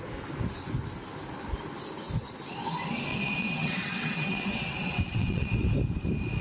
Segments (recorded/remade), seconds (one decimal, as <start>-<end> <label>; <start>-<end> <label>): 0.0-3.1 recorded; 3.1-5.5 remade; 5.5-6.4 recorded